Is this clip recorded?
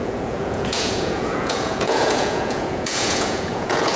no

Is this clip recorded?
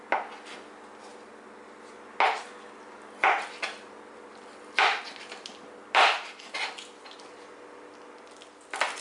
yes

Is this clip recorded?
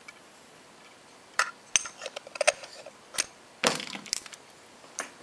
yes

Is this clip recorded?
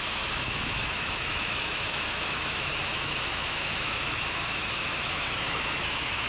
no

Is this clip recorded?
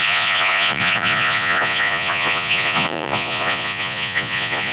no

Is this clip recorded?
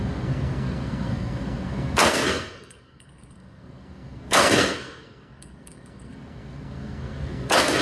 no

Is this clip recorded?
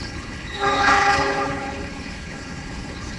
no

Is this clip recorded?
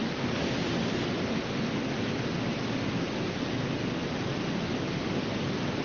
yes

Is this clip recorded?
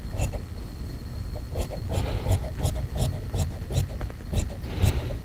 yes